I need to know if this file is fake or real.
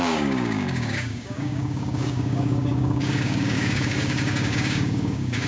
fake